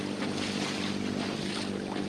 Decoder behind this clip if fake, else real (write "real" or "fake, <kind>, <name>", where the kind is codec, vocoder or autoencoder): real